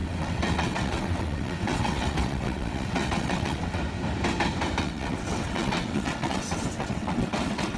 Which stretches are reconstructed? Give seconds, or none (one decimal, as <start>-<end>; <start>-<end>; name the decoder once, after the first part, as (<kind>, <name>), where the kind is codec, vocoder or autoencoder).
0.0-3.8 (vocoder, WaveNeXt); 4.8-7.8